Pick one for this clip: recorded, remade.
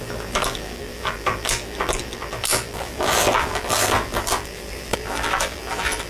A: remade